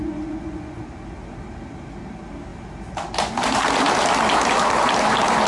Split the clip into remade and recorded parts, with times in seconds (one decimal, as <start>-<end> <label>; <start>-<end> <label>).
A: 0.0-0.8 remade; 0.8-5.5 recorded